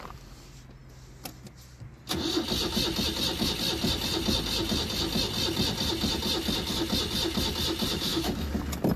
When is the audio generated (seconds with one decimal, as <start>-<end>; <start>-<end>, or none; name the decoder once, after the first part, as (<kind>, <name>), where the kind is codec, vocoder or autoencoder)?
7.9-8.5 (autoencoder, DAC-VAE)